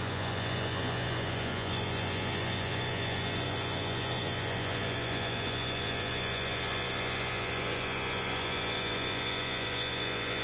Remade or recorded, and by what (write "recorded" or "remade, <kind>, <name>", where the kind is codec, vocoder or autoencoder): remade, vocoder, Vocos